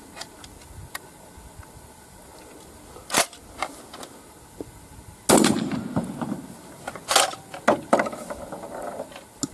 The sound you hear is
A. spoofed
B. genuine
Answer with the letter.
B